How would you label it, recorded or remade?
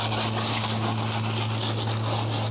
recorded